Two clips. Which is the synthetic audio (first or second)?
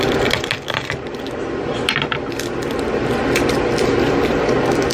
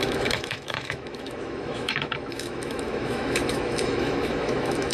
second